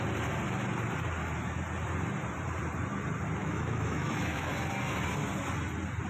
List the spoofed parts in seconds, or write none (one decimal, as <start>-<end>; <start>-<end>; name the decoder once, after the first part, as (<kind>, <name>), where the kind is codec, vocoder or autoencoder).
3.4-4.5 (autoencoder, DAC-VAE)